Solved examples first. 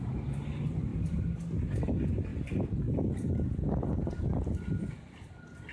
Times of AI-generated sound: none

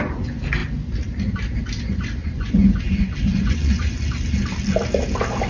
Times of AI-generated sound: 2.2-4.0